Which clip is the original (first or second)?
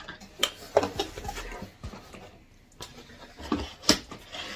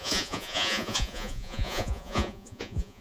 first